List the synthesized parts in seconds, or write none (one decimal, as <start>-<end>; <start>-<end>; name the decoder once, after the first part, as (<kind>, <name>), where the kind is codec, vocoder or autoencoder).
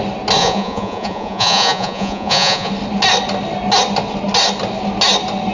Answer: 0.4-2.7 (vocoder, Vocos)